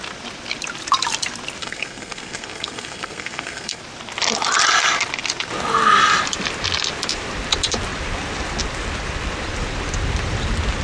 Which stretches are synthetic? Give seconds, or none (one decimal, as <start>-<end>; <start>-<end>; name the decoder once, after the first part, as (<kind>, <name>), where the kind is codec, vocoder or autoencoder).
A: 1.6-3.8 (codec, SNAC)

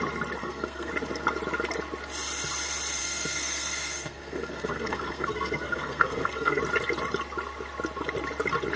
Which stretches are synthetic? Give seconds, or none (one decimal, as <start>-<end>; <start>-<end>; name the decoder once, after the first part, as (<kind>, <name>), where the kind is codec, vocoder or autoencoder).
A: 0.4-0.9 (codec, SNAC); 3.0-6.6

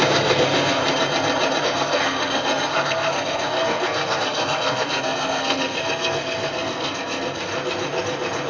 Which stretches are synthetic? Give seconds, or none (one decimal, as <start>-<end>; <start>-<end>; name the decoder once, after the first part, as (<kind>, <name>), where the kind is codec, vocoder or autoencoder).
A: 0.0-0.8 (codec, SNAC); 1.6-7.5